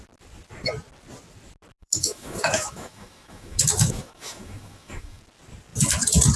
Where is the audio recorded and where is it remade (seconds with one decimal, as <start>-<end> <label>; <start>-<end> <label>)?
0.0-1.8 recorded; 1.8-5.2 remade; 5.2-6.4 recorded